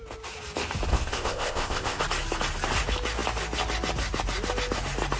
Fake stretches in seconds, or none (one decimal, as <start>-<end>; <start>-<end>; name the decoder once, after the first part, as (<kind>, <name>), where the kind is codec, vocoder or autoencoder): 0.9-2.0 (codec, ZipCodec)